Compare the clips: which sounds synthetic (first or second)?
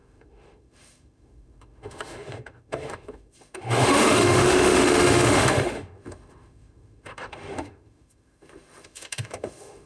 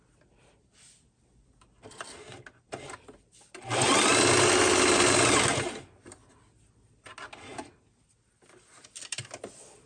first